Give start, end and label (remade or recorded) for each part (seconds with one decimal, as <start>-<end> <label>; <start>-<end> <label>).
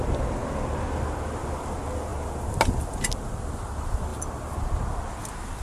0.0-5.6 recorded